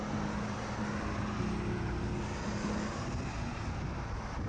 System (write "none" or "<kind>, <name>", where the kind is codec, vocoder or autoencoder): none